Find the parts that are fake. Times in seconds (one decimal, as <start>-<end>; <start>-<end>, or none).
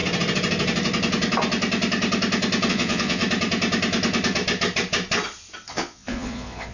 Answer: 2.7-3.2; 5.7-6.7